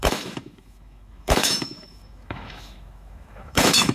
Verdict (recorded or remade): remade